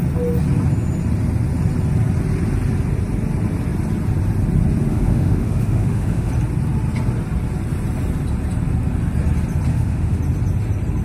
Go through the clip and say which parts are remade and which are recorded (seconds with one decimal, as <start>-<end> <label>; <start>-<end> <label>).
0.0-4.9 recorded; 4.9-6.3 remade; 6.3-9.7 recorded; 9.7-10.2 remade; 10.2-11.0 recorded